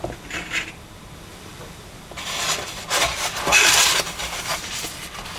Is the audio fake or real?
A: fake